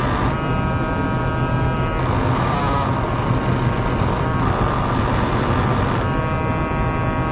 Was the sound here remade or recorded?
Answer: recorded